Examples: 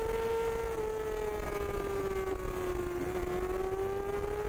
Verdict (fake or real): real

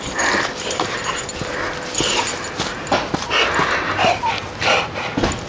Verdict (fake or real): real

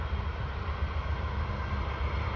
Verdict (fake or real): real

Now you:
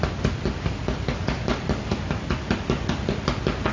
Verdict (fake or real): real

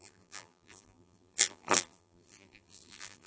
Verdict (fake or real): fake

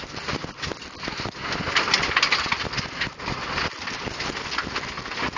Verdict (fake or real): real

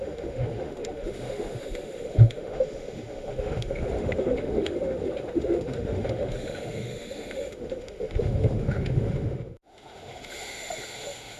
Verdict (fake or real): fake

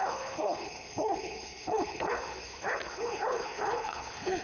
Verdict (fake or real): fake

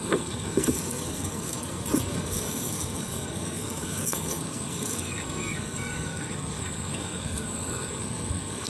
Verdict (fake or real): fake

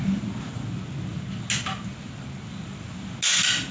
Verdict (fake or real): real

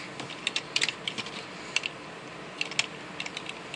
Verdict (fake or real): real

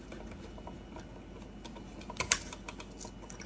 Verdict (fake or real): real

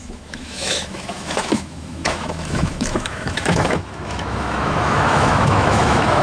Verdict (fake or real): fake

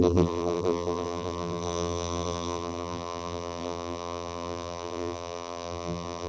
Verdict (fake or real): fake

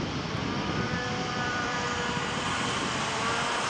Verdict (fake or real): fake